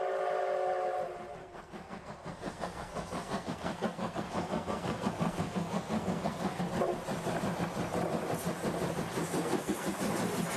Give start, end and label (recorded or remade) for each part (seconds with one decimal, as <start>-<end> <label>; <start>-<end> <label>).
0.0-1.4 recorded; 1.4-6.6 remade; 6.6-9.2 recorded; 9.2-10.0 remade; 10.0-10.6 recorded